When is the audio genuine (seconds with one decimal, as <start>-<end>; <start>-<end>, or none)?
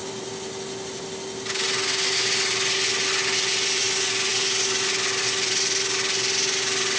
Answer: 0.0-7.0